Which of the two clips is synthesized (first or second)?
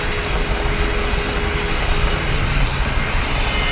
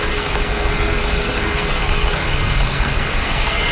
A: second